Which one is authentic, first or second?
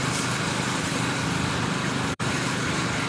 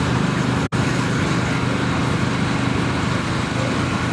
second